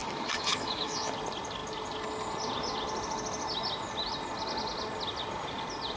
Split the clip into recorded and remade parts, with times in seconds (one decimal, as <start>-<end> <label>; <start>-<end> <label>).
0.0-1.1 remade; 1.1-6.0 recorded